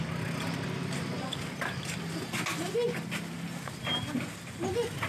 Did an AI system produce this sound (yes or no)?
no